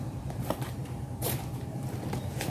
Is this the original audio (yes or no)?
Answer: no